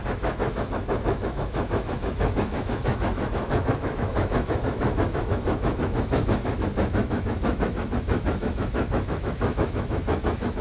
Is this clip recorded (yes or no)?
no